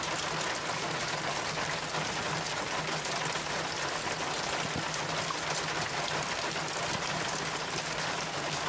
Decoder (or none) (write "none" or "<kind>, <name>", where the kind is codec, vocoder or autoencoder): none